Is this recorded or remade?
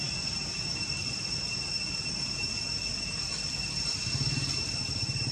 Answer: recorded